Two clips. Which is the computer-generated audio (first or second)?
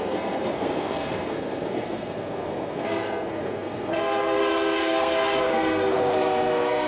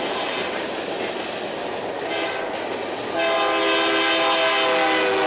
first